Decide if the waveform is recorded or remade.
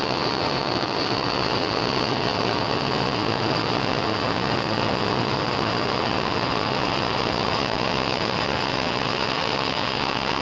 remade